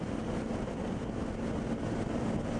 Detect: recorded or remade recorded